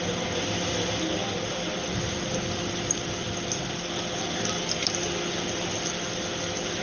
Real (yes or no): yes